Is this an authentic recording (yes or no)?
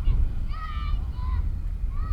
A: yes